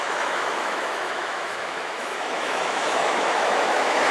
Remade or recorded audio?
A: remade